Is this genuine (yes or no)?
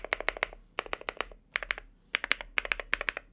yes